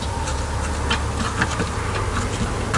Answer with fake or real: real